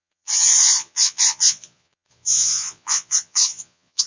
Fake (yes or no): yes